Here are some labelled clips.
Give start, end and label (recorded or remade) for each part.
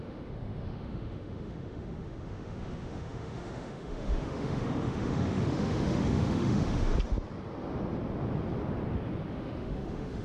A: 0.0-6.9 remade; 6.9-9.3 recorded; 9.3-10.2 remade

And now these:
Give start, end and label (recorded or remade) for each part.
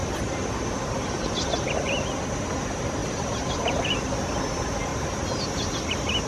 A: 0.0-6.3 recorded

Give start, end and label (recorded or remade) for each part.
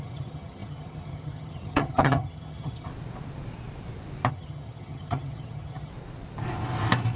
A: 0.0-2.9 remade; 2.9-4.3 recorded; 4.3-5.9 remade; 5.9-7.2 recorded